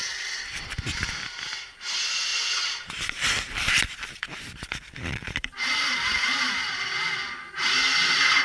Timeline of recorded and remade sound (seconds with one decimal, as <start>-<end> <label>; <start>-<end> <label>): 0.0-2.3 recorded; 2.3-6.5 remade; 6.5-8.4 recorded